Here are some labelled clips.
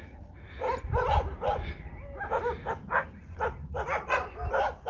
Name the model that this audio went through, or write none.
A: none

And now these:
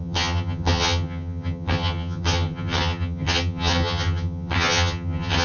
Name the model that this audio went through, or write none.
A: vocoder, HiFi-GAN